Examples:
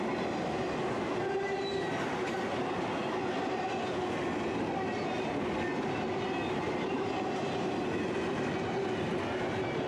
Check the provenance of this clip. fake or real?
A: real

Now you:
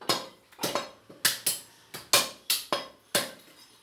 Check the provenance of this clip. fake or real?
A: real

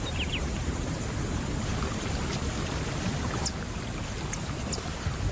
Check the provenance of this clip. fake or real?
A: real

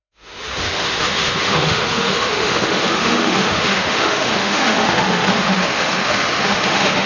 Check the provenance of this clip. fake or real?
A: fake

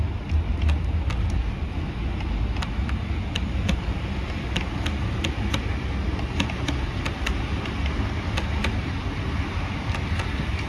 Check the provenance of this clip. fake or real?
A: real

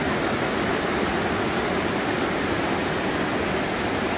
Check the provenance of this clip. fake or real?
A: real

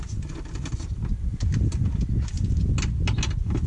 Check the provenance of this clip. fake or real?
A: real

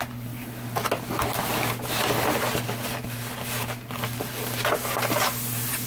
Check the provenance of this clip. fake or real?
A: real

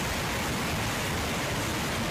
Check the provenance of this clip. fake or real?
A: real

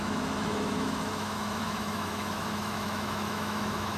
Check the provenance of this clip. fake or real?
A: fake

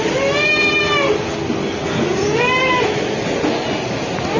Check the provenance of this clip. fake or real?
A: real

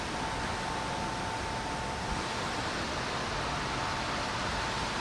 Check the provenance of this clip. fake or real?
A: real